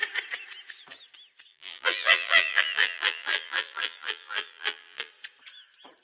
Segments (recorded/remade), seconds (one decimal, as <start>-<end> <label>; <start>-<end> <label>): 0.0-1.5 recorded; 1.5-5.1 remade; 5.1-6.0 recorded